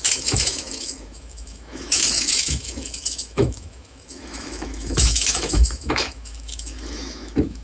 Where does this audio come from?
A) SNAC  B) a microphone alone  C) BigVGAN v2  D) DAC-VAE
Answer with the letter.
D